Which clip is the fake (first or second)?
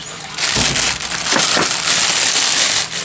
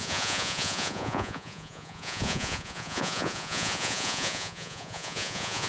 second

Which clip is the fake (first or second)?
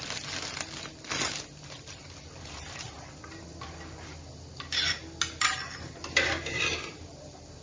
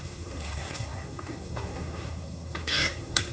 second